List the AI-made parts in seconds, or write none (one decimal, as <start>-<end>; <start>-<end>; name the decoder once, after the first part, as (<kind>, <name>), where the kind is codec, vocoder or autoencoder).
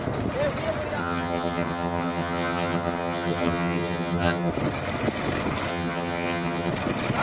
1.0-4.5 (vocoder, HiFi-GAN); 5.7-6.7